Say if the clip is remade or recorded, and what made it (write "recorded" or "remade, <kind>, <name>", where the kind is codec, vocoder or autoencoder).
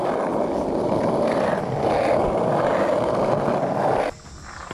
recorded